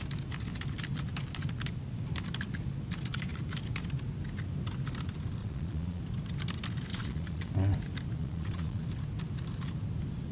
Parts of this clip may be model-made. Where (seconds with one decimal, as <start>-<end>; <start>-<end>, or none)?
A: 5.4-6.0; 6.9-7.5; 8.2-8.8